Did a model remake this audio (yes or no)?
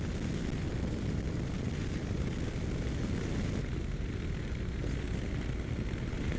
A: no